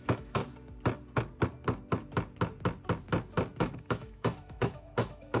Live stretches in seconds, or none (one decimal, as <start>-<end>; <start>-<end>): 0.4-3.6